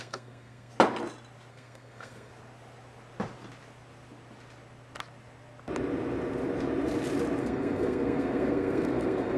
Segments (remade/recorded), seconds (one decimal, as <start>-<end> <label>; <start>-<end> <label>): 0.0-0.7 remade; 0.7-1.5 recorded; 1.5-2.3 remade; 2.3-7.4 recorded; 7.4-9.4 remade